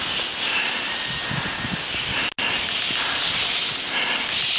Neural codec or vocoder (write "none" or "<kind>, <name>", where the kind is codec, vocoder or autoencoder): none